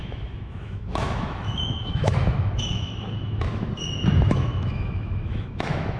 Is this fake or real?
fake